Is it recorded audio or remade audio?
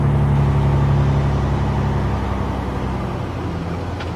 recorded